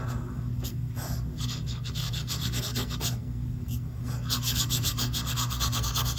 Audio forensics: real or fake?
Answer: fake